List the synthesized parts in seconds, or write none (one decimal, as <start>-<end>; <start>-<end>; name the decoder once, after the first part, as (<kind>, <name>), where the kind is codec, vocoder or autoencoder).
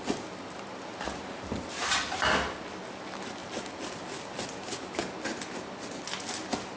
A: none